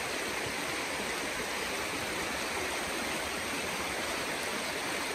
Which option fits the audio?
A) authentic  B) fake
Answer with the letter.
B